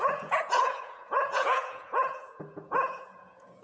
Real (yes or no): no